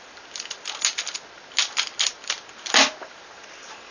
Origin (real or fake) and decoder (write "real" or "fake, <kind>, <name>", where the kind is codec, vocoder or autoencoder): real